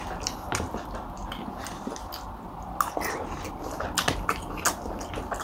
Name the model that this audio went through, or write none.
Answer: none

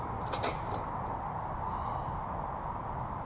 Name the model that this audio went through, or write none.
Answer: none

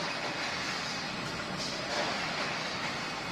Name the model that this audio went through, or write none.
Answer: none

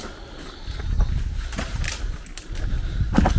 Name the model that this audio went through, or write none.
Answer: none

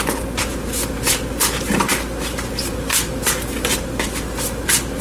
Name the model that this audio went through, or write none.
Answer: none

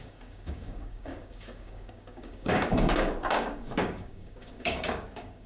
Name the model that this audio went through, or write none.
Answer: codec, DAC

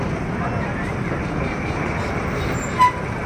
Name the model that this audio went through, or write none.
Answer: none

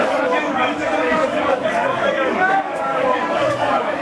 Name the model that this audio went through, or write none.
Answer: codec, DAC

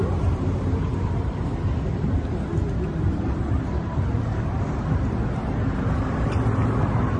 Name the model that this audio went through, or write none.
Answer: none